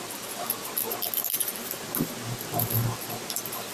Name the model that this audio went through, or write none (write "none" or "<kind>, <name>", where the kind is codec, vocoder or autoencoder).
none